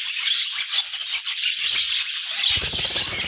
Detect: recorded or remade recorded